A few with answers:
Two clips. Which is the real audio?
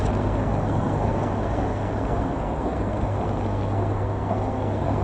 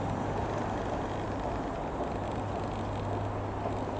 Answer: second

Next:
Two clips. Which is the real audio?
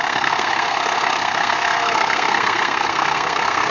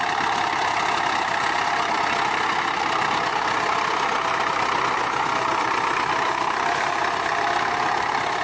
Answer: second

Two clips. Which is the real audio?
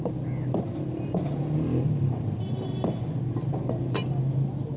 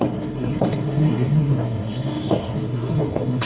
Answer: first